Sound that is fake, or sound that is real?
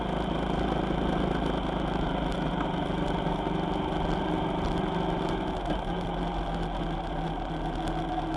real